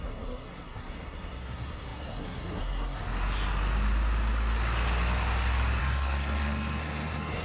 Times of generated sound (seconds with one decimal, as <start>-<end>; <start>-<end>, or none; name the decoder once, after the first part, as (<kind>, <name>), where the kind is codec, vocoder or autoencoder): 0.0-3.0 (codec, SNAC); 5.8-7.4